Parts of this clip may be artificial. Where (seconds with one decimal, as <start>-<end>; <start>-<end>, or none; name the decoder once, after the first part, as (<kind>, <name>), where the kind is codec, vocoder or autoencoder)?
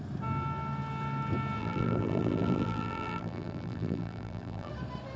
1.6-4.7 (vocoder, BigVGAN v2)